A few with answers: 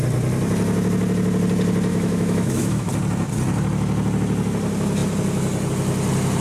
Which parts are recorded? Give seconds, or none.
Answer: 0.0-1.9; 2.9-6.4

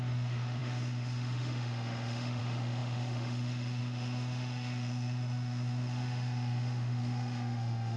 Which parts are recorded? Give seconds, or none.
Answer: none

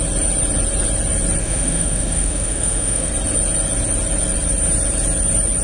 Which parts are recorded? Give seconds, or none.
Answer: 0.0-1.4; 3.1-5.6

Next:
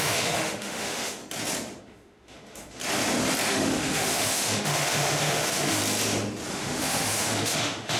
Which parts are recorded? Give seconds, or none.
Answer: 1.2-1.8; 2.8-3.5; 5.8-6.5

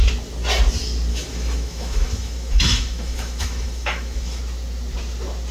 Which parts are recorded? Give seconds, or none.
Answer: 0.0-1.1; 4.4-5.5

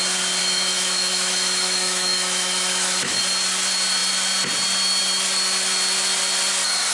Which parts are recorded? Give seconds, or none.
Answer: 0.0-0.4; 3.2-6.9

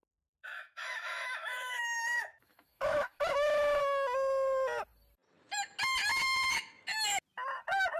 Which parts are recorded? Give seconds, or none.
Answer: 3.8-6.1; 6.7-8.0